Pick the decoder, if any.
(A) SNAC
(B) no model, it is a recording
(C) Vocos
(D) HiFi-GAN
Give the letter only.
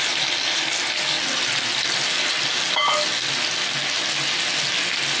B